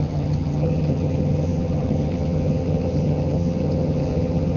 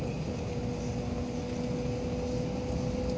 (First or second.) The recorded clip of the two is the second